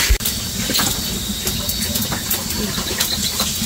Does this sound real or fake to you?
real